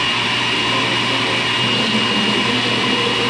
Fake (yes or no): no